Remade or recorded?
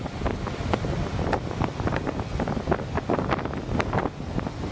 recorded